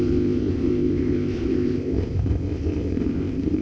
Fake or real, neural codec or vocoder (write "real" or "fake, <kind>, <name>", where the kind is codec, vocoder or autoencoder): fake, codec, ZipCodec